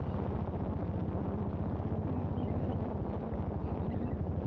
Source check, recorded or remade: recorded